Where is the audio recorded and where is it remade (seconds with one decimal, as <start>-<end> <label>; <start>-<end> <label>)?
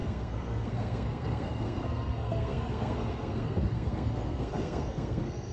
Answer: 0.0-5.5 remade